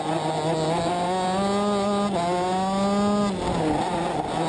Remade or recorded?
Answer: recorded